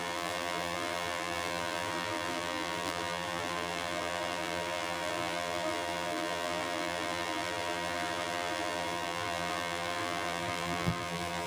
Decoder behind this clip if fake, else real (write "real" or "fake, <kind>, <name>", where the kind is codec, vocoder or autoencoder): fake, vocoder, BigVGAN v2